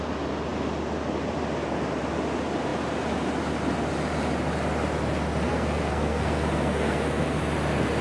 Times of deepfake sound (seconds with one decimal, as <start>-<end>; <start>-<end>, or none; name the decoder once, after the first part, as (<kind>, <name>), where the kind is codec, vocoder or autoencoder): 5.5-7.4 (codec, SNAC)